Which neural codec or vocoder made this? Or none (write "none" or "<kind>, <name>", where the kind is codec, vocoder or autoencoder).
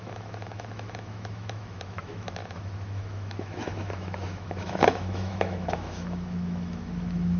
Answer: autoencoder, DAC-VAE